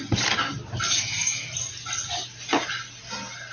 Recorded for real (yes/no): yes